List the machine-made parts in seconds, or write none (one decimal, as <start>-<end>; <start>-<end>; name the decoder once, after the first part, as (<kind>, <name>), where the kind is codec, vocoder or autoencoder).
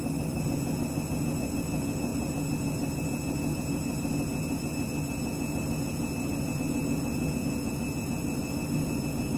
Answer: none